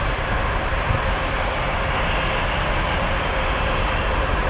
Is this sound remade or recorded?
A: recorded